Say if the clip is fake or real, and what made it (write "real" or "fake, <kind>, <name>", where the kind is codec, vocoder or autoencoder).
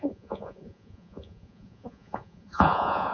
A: fake, vocoder, Vocos